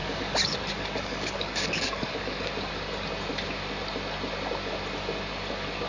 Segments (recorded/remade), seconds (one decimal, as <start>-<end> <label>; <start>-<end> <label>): 0.0-2.5 remade; 2.5-5.9 recorded